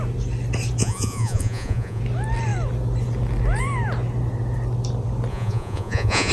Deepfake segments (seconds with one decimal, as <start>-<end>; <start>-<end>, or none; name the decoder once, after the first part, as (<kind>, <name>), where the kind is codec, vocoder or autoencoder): 0.8-2.0 (vocoder, Vocos); 5.3-6.3

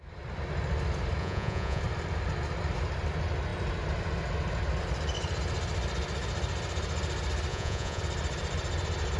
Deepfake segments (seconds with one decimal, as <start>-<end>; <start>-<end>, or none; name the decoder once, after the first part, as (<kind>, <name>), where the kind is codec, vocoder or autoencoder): 1.2-1.8 (vocoder, Vocos); 7.5-8.0